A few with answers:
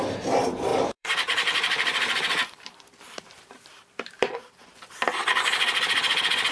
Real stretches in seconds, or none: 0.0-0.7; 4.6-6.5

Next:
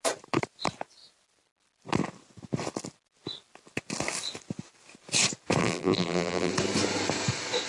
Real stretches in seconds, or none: 0.0-5.6; 6.5-7.7

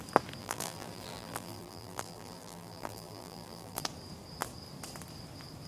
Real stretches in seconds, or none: 0.0-0.4; 3.8-5.7

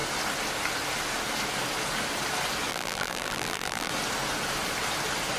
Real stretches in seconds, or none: 0.0-2.7; 3.9-5.4

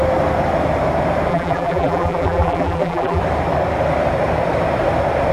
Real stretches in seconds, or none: 0.0-1.3; 3.2-5.3